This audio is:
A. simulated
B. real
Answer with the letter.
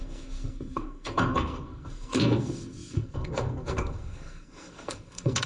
A